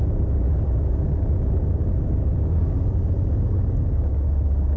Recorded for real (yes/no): yes